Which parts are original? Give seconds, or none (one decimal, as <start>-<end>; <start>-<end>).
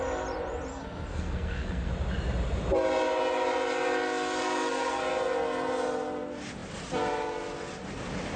0.0-0.7; 1.9-4.4; 5.0-8.4